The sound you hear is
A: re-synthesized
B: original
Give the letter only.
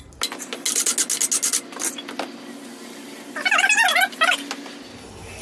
B